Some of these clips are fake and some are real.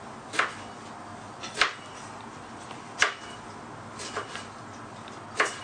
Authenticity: real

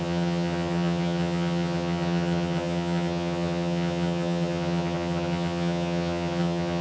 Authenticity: fake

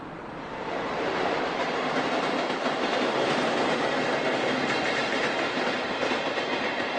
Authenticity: fake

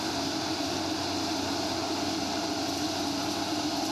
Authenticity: real